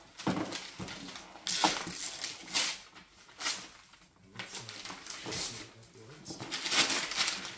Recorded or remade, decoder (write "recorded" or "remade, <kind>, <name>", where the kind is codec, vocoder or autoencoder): recorded